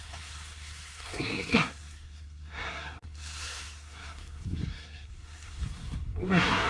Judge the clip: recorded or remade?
remade